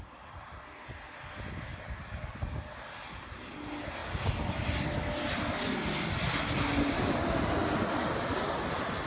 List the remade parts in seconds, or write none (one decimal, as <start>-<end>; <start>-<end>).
none